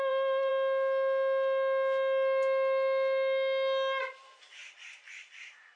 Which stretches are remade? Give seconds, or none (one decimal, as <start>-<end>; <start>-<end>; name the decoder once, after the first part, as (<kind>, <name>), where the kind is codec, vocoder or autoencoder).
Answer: 0.0-0.5 (vocoder, BigVGAN v2); 4.0-5.8